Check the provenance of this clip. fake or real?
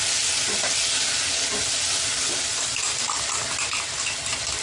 real